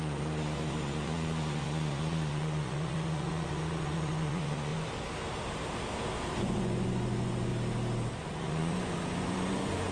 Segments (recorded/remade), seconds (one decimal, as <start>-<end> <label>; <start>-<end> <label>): 0.0-4.7 remade; 4.7-6.3 recorded; 6.3-7.5 remade; 7.5-8.1 recorded; 8.1-9.9 remade